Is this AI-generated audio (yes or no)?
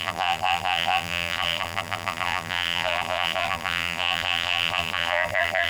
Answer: yes